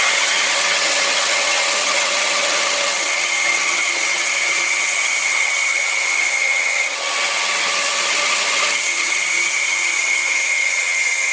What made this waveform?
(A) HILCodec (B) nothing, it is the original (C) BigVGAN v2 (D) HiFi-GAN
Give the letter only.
D